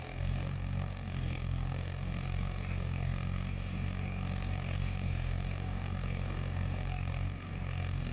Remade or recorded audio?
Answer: remade